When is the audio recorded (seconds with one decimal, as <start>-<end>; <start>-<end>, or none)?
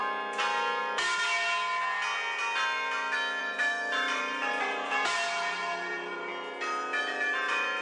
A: 0.0-3.4; 6.3-7.0